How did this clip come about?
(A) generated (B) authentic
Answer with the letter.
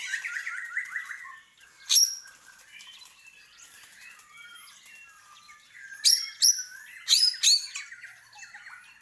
B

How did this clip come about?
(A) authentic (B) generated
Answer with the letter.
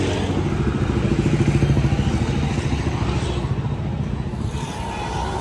A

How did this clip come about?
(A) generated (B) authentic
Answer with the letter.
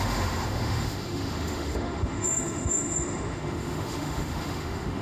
A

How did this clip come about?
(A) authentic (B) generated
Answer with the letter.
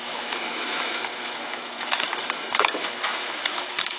B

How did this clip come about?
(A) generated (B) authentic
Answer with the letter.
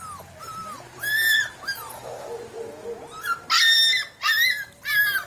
B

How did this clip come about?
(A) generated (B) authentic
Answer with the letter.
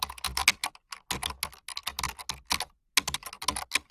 B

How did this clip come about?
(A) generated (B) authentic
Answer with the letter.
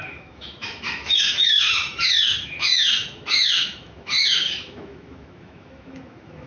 A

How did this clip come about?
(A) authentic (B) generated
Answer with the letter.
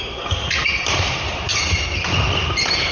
A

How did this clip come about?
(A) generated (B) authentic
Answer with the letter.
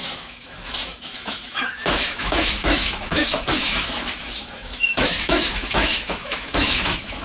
A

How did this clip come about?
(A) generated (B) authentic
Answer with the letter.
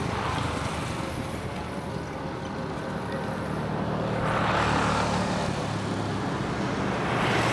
B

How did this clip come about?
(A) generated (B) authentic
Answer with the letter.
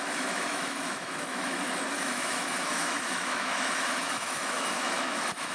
A